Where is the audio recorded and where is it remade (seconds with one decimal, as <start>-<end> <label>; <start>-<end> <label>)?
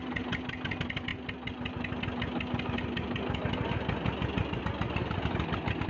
0.0-5.9 recorded